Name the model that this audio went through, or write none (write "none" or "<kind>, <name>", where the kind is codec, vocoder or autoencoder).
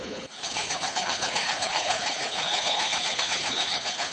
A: codec, HILCodec